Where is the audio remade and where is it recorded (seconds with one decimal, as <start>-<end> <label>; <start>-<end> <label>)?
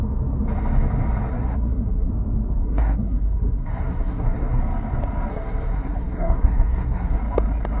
0.0-1.3 recorded; 1.3-2.1 remade; 2.1-2.6 recorded; 2.6-4.6 remade; 4.6-5.3 recorded; 5.3-7.2 remade; 7.2-7.8 recorded